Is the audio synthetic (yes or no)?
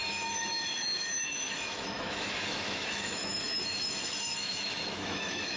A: yes